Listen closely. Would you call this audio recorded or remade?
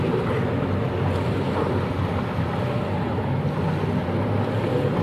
recorded